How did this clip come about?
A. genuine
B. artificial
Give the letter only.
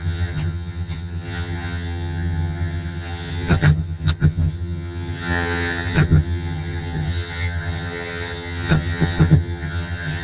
B